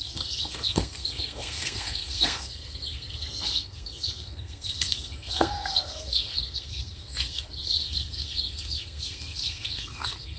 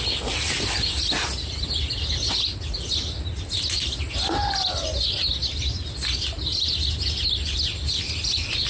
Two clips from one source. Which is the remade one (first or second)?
first